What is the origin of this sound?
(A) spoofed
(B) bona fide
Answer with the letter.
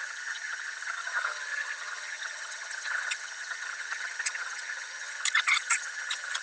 A